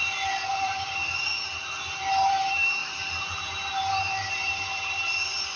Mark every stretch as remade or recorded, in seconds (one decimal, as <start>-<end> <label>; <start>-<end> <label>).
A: 0.0-0.5 recorded; 0.5-1.3 remade; 1.3-2.0 recorded; 2.0-5.6 remade